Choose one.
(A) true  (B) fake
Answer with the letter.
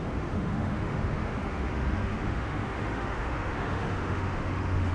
B